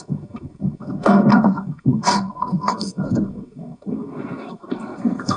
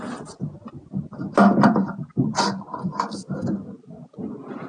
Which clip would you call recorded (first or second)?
second